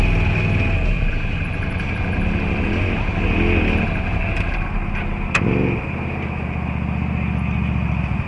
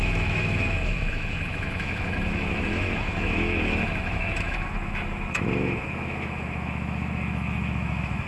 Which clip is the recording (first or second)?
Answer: first